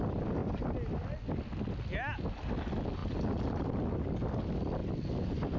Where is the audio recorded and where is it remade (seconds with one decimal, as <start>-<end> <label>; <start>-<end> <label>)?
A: 0.0-5.6 recorded